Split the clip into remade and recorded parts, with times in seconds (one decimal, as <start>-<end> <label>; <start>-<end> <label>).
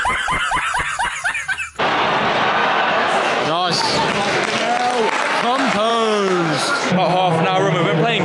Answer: 0.0-2.6 recorded; 2.6-3.8 remade; 3.8-5.9 recorded; 5.9-6.9 remade; 6.9-8.2 recorded